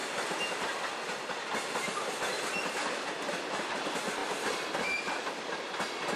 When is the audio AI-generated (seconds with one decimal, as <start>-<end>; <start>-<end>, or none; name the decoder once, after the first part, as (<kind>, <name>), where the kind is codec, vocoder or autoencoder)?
none